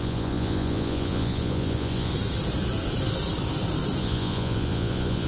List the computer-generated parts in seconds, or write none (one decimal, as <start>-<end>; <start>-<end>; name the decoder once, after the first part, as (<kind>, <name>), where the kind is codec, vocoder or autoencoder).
0.0-2.1 (vocoder, Vocos); 4.0-5.3